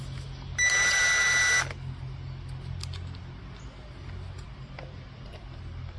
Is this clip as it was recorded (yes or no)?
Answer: yes